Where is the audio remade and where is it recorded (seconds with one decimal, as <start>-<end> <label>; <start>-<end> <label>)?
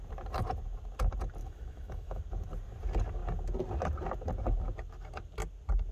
0.0-1.4 recorded; 1.4-2.2 remade; 2.2-5.9 recorded